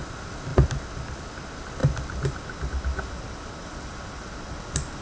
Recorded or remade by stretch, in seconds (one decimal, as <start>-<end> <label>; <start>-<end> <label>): 0.0-5.0 recorded